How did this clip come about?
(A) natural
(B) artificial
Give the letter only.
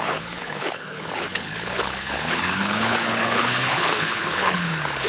B